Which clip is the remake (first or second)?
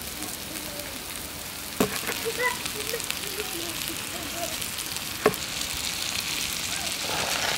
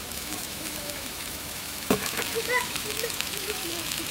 second